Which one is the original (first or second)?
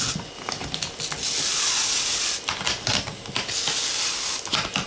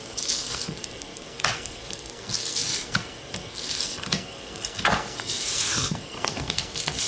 first